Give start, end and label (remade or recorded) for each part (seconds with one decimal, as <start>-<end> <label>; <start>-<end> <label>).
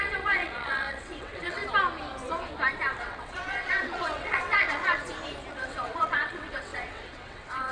0.0-1.6 remade; 1.6-3.0 recorded; 3.0-5.0 remade; 5.0-5.5 recorded; 5.5-7.7 remade